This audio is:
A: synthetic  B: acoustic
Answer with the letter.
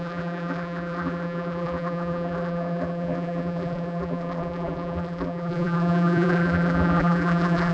A